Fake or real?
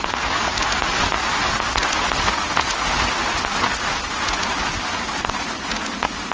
real